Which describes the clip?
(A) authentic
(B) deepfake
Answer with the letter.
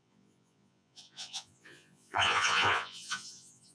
B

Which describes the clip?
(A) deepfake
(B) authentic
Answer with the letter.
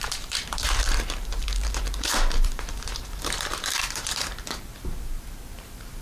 A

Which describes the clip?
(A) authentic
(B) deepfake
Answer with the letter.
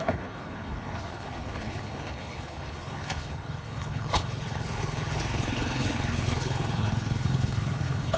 B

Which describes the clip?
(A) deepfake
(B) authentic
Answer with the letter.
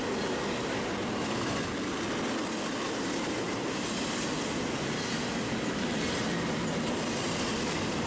B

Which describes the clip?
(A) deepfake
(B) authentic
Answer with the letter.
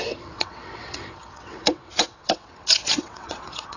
A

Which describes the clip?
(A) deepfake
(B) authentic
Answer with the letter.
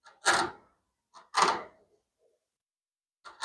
B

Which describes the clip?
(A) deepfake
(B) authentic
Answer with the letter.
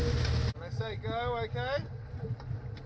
B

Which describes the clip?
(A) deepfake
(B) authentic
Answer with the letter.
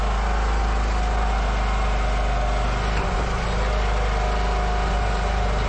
B